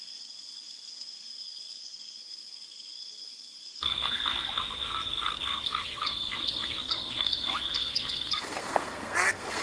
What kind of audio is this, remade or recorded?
remade